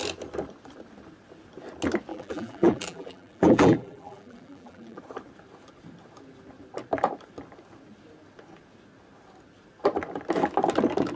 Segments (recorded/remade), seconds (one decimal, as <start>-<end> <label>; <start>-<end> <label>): 0.0-2.1 recorded; 2.1-5.0 remade; 5.0-11.2 recorded